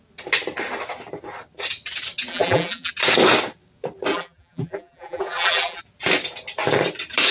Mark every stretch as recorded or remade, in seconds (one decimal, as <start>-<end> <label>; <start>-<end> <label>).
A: 0.0-2.3 recorded; 2.3-2.9 remade; 2.9-4.1 recorded; 4.1-5.8 remade; 5.8-7.3 recorded

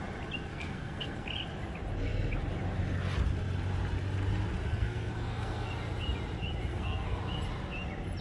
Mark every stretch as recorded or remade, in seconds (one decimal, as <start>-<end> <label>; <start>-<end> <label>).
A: 0.0-0.5 recorded; 0.5-1.3 remade; 1.3-4.7 recorded; 4.7-5.7 remade; 5.7-6.7 recorded; 6.7-7.2 remade; 7.2-8.2 recorded

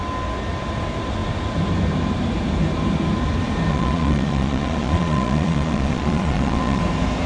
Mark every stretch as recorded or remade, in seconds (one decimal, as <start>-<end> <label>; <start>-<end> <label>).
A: 0.0-3.7 recorded; 3.7-6.8 remade; 6.8-7.3 recorded

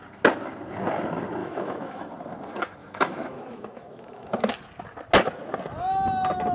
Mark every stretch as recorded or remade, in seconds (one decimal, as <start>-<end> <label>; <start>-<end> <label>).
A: 0.0-1.4 recorded; 1.4-2.1 remade; 2.1-2.8 recorded; 2.8-4.5 remade; 4.5-6.5 recorded

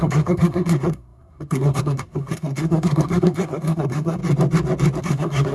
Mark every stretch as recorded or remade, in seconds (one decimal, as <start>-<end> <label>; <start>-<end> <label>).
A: 0.0-4.2 remade; 4.2-5.0 recorded; 5.0-5.5 remade

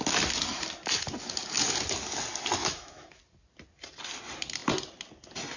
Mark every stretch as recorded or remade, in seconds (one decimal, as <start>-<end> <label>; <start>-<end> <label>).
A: 0.0-2.6 recorded; 2.6-3.2 remade; 3.2-5.6 recorded